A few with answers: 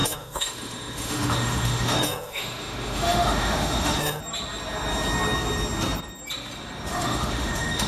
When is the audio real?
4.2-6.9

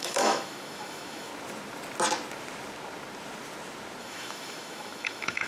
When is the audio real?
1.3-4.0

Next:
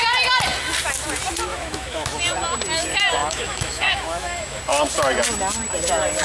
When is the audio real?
0.0-1.5; 2.2-3.2; 4.6-6.2

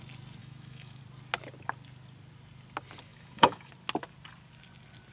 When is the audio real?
0.0-0.4; 1.0-3.1; 3.7-5.1

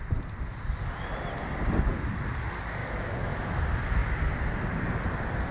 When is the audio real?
0.0-2.8; 3.6-5.5